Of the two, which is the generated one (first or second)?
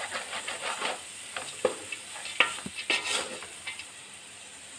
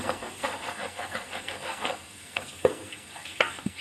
second